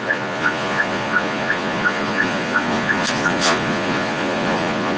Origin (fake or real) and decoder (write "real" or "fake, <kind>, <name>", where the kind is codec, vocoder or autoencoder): fake, vocoder, Vocos